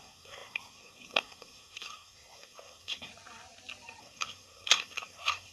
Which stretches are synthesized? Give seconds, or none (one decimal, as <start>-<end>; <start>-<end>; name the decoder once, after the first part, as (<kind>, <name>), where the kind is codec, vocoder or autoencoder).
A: 0.0-3.1 (codec, SNAC); 4.0-5.5